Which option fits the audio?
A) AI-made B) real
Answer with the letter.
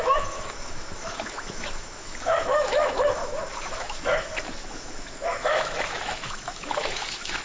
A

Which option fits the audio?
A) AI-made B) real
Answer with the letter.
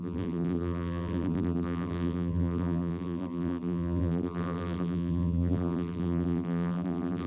A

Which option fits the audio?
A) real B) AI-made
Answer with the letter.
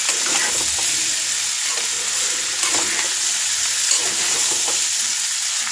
A